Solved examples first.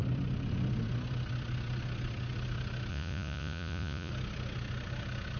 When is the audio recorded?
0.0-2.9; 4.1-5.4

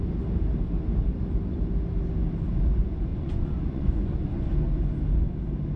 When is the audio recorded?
0.0-3.1; 4.5-5.8

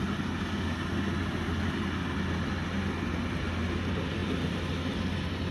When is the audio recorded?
0.0-5.5

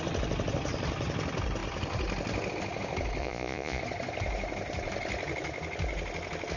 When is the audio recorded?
0.0-3.2; 3.8-6.6

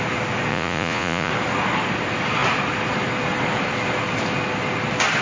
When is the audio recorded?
0.0-0.5; 1.3-5.2

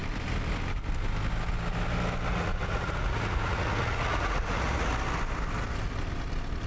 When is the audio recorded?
0.0-2.3; 4.9-6.7

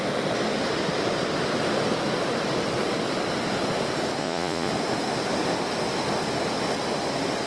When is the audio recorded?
0.0-4.2; 4.7-7.5

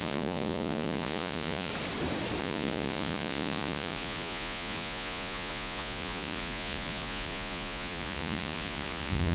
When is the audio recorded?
1.7-2.4